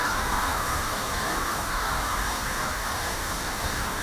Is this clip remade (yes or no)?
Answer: yes